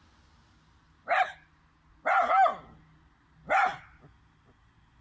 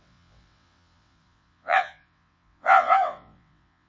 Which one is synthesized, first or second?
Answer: second